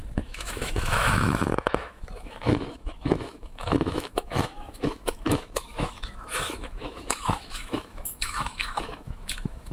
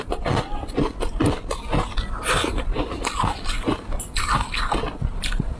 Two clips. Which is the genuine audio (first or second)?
second